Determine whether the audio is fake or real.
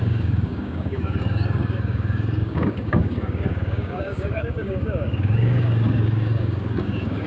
fake